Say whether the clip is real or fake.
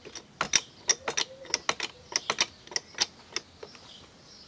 real